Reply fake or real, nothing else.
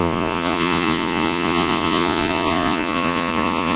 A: fake